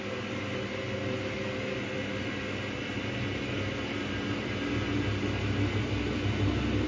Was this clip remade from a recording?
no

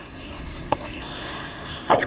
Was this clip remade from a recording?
yes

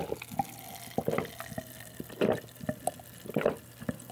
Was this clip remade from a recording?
no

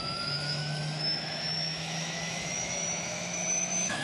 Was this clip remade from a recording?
yes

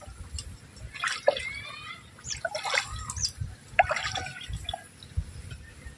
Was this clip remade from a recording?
no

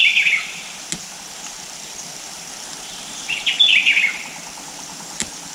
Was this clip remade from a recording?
yes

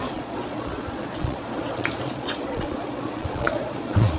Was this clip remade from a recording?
yes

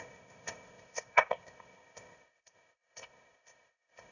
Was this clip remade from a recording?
yes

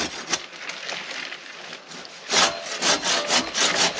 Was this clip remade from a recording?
no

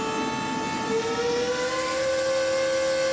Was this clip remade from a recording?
no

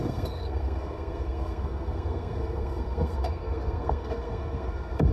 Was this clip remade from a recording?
yes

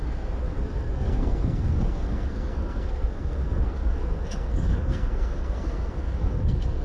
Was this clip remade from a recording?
yes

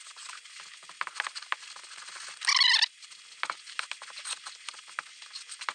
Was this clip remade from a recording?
no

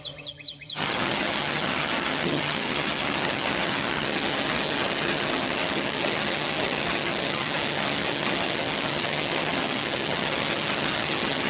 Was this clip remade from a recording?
yes